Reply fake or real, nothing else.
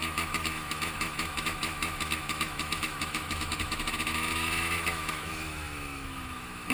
fake